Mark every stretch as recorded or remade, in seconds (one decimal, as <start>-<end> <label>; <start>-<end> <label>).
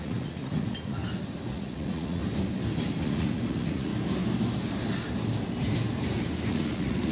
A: 0.0-1.0 remade; 1.0-1.5 recorded; 1.5-2.2 remade; 2.2-3.0 recorded; 3.0-3.9 remade; 3.9-6.5 recorded; 6.5-7.1 remade